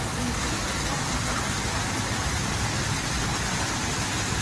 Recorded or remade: recorded